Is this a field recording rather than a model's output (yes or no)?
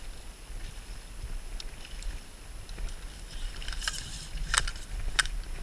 yes